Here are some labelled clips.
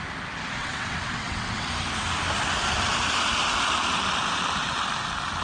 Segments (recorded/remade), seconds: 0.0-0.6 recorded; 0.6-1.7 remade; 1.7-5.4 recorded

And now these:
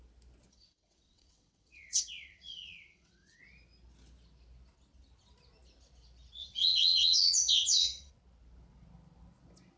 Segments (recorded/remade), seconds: 0.0-0.5 recorded; 0.5-3.4 remade; 3.4-6.4 recorded; 6.4-8.1 remade; 8.1-9.8 recorded